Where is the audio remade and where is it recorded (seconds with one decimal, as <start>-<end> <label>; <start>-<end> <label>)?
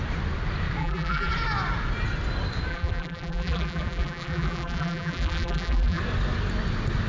0.0-0.8 recorded; 0.8-1.3 remade; 1.3-2.7 recorded; 2.7-6.0 remade; 6.0-7.1 recorded